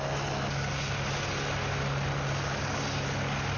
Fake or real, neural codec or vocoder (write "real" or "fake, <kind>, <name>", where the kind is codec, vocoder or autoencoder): real